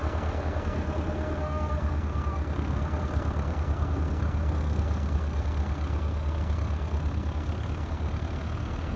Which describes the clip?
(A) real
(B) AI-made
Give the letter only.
B